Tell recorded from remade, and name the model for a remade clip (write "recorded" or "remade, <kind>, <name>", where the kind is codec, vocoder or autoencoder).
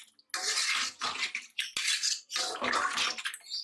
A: recorded